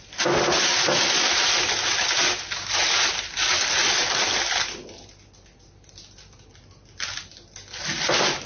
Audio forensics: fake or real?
real